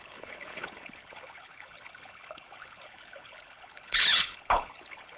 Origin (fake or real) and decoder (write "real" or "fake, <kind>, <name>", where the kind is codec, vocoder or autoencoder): fake, codec, HILCodec